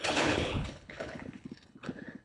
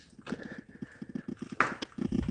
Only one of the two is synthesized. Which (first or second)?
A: first